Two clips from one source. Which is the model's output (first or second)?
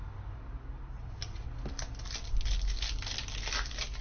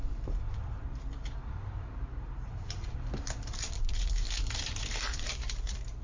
second